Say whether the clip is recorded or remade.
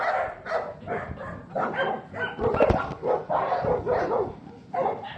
recorded